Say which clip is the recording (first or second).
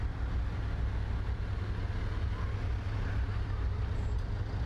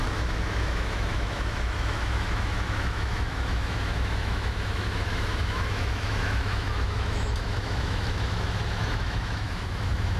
first